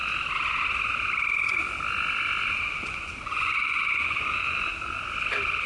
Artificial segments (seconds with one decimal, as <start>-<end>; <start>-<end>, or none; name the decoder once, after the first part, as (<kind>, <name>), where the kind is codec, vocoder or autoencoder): 2.8-4.7 (vocoder, Vocos)